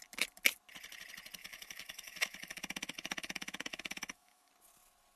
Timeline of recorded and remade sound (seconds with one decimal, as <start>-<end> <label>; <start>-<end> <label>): 0.0-1.4 recorded; 1.4-4.5 remade; 4.5-5.2 recorded